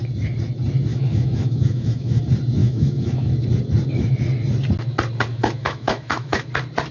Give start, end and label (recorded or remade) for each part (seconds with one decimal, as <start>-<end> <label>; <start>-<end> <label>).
0.0-0.9 recorded; 0.9-2.2 remade; 2.2-2.6 recorded; 2.6-3.3 remade; 3.3-5.3 recorded; 5.3-6.5 remade; 6.5-6.9 recorded